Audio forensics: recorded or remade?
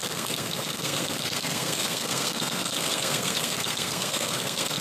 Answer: remade